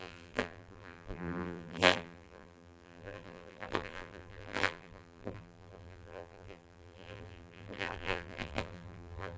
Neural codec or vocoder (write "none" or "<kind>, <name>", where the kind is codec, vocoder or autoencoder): vocoder, BigVGAN v2